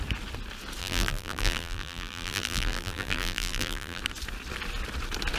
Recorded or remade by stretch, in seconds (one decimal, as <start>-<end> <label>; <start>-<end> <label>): 0.0-0.8 recorded; 0.8-4.0 remade; 4.0-5.4 recorded